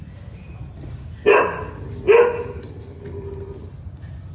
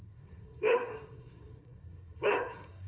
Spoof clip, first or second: second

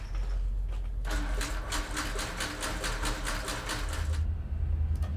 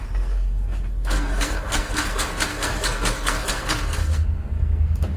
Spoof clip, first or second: second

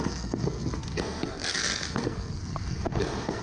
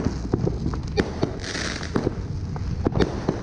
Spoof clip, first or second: first